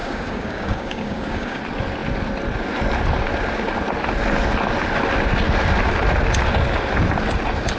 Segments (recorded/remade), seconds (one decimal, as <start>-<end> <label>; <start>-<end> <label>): 0.0-1.6 remade; 1.6-7.8 recorded

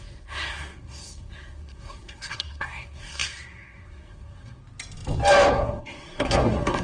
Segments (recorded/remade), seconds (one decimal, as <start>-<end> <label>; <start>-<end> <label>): 0.0-4.6 remade; 4.6-5.5 recorded; 5.5-6.8 remade

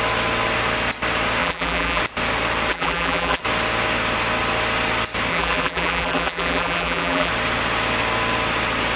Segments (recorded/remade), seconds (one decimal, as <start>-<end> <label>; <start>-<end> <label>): 0.0-1.4 recorded; 1.4-2.0 remade; 2.0-2.7 recorded; 2.7-3.4 remade; 3.4-5.3 recorded; 5.3-7.3 remade; 7.3-9.0 recorded

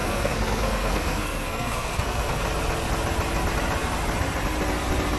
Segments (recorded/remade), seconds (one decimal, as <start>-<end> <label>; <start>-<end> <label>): 0.0-2.4 remade; 2.4-5.2 recorded